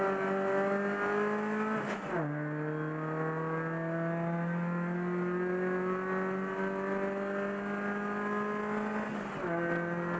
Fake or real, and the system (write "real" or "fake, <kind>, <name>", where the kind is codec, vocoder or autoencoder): real